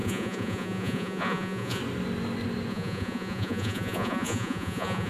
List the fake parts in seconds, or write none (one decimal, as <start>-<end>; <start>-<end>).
0.0-1.8; 2.7-5.1

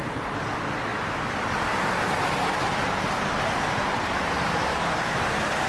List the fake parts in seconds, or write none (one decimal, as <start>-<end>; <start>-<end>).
none